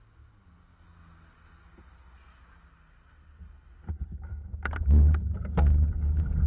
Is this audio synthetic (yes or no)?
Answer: no